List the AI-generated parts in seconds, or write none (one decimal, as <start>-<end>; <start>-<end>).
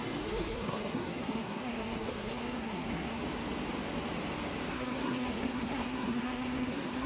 0.0-3.2; 4.7-7.1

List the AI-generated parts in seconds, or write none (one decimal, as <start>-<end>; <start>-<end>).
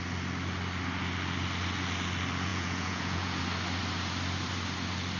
2.5-3.4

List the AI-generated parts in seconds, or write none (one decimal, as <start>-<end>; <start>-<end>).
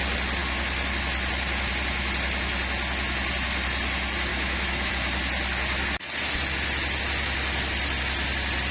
4.3-4.9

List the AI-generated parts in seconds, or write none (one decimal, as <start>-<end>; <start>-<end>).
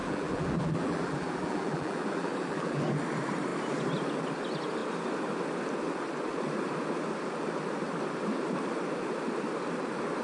0.0-2.8